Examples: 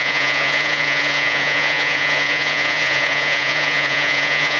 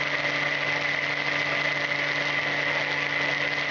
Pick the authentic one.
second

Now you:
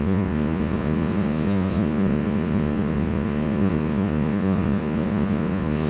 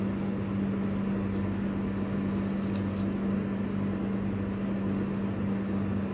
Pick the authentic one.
second